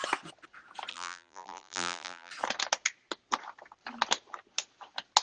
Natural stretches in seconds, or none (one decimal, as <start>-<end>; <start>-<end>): 0.0-0.9; 2.3-5.2